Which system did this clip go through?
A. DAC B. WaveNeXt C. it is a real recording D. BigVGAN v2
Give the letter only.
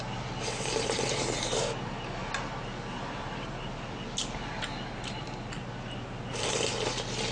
C